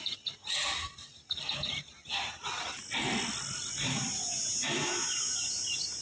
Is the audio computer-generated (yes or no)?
no